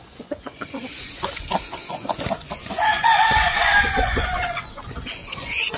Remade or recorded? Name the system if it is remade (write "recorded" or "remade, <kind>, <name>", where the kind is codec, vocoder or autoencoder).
remade, vocoder, Vocos